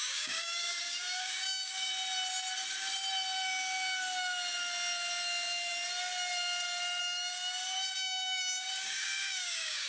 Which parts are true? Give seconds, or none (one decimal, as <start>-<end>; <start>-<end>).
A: 1.9-7.0